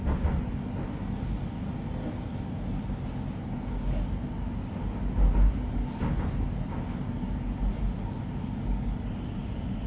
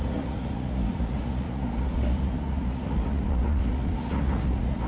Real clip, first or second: first